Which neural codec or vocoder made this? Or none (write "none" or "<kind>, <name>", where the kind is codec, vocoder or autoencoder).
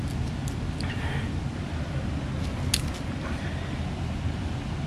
none